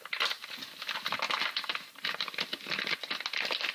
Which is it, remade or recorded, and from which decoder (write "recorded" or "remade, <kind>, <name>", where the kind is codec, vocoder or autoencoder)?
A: recorded